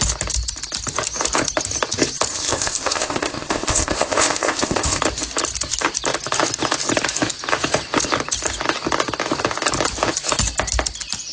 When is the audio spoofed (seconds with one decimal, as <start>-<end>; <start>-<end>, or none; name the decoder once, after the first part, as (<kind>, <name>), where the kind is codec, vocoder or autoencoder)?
2.3-5.0 (codec, ZipCodec)